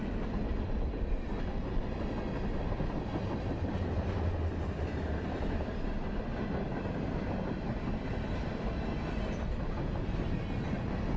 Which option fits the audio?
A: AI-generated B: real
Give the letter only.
B